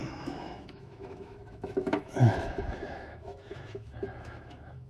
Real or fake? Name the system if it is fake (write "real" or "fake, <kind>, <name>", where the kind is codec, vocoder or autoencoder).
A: fake, autoencoder, DAC-VAE